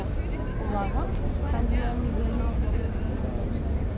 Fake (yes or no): no